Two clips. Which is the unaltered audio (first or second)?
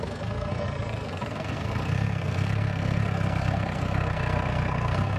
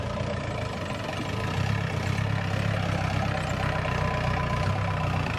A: second